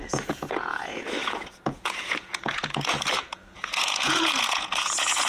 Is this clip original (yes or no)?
no